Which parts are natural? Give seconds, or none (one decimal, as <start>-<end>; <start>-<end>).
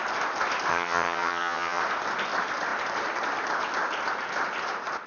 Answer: 0.0-0.7; 1.8-5.1